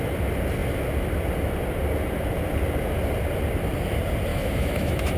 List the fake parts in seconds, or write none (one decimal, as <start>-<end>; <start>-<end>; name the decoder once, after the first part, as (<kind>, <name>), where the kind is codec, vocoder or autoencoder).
4.3-5.2 (autoencoder, DAC-VAE)

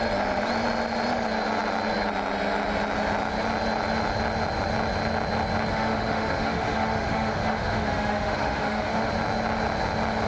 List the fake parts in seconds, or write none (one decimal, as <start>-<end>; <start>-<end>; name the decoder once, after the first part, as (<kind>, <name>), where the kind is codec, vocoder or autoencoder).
5.7-9.1 (autoencoder, DAC-VAE)